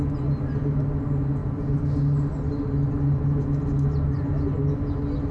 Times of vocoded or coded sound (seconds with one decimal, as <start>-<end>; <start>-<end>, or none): none